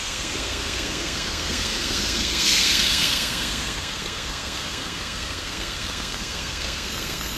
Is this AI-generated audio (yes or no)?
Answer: yes